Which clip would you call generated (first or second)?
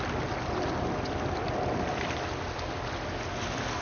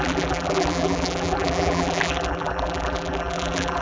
second